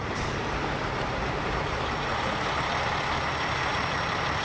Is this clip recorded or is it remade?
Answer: remade